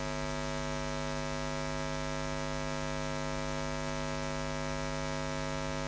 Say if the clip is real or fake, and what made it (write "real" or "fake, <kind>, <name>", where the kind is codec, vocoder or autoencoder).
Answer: real